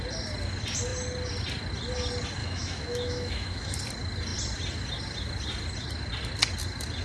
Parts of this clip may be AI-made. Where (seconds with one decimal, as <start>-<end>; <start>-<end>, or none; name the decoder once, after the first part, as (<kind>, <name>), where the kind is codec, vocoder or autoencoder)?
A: 2.4-3.8 (autoencoder, DAC-VAE)